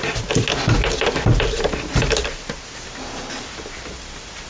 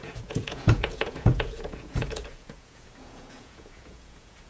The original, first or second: first